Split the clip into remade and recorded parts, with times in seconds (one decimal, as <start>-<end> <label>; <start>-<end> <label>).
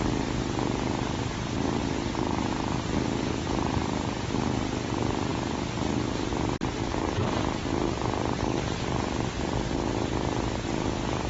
0.0-5.3 remade; 5.3-7.6 recorded; 7.6-11.3 remade